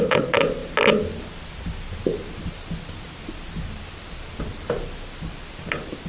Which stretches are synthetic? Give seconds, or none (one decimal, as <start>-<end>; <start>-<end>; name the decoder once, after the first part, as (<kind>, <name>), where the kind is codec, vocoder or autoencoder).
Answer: none